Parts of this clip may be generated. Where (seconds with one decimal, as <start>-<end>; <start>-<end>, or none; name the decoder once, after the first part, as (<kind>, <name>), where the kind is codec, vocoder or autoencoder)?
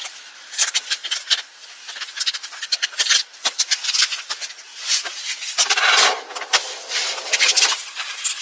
none